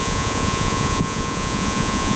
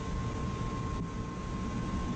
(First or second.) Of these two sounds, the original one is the second